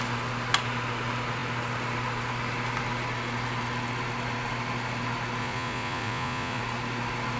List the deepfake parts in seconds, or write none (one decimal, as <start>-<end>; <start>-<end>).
5.4-6.6